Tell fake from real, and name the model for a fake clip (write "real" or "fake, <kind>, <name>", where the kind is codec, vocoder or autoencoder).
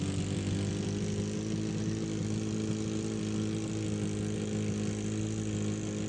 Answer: real